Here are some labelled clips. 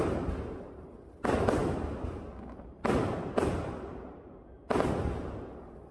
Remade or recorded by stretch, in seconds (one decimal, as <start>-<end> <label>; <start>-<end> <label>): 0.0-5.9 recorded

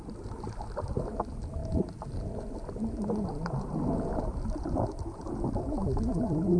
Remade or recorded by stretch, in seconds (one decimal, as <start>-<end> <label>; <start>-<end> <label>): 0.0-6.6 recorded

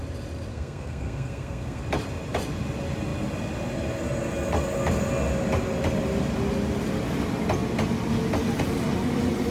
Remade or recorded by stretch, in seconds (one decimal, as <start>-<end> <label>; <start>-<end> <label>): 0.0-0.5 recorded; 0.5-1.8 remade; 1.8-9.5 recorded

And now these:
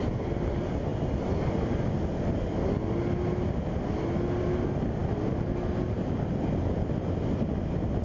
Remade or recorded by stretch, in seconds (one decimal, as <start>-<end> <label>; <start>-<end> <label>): 0.0-8.0 recorded